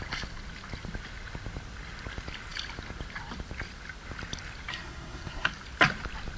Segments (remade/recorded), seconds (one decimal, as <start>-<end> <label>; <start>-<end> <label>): 0.0-4.7 recorded; 4.7-5.5 remade; 5.5-6.4 recorded